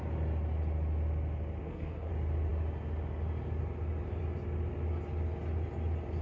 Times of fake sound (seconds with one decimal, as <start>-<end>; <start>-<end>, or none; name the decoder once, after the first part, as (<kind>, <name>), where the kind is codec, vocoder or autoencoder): 1.6-2.1 (codec, SNAC)